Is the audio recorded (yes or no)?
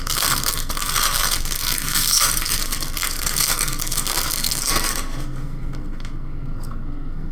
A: no